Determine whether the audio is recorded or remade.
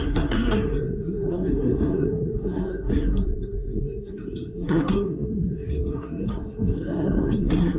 remade